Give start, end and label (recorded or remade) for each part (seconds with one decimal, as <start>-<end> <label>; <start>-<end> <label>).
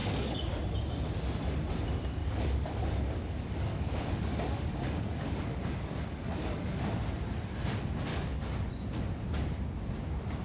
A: 0.0-0.6 remade; 0.6-2.2 recorded; 2.2-6.8 remade; 6.8-8.1 recorded; 8.1-8.7 remade; 8.7-10.4 recorded